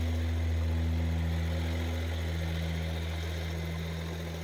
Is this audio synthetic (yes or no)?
no